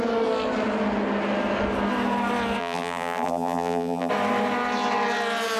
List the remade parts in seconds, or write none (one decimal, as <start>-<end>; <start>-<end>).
2.6-4.1